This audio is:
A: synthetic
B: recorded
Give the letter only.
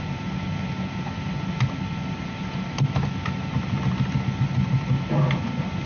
B